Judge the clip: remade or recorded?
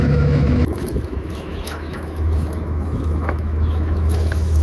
remade